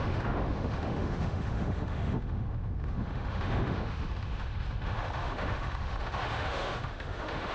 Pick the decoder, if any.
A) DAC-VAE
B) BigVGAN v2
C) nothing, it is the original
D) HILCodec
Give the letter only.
A